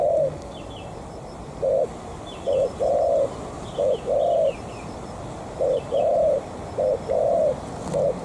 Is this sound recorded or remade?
remade